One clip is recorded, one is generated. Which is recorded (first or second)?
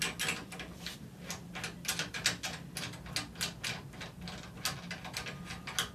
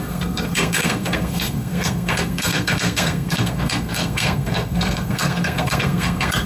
first